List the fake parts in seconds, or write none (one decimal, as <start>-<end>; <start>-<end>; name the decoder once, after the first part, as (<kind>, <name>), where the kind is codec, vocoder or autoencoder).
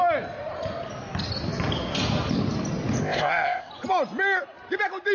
3.0-3.7 (codec, ZipCodec)